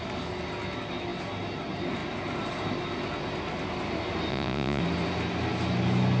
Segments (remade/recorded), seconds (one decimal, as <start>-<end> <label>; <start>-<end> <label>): 0.0-4.3 recorded; 4.3-4.8 remade; 4.8-6.2 recorded